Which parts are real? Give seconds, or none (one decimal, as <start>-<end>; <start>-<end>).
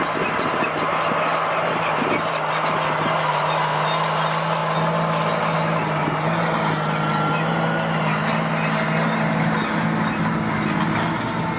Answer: 0.0-11.6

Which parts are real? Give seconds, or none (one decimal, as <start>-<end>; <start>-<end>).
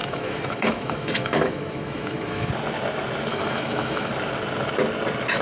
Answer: 2.5-3.3; 4.1-5.4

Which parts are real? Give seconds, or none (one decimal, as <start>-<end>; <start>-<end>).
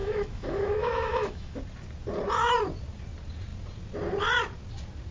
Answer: 1.6-5.1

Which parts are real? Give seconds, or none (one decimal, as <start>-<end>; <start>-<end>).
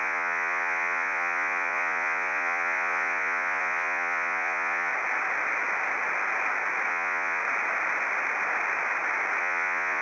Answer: 4.9-6.9; 7.4-9.4